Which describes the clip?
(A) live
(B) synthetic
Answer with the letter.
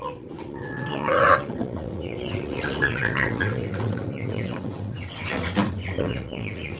B